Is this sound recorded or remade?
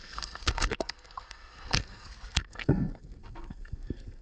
remade